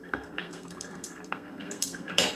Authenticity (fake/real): fake